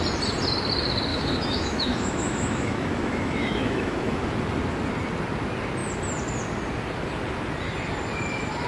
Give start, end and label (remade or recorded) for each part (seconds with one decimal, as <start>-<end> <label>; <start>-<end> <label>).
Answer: 0.0-1.1 recorded; 1.1-4.3 remade; 4.3-8.7 recorded